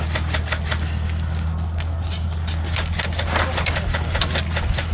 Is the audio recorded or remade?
recorded